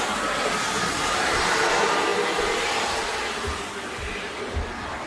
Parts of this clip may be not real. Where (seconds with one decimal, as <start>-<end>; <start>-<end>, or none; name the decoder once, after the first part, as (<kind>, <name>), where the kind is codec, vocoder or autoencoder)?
none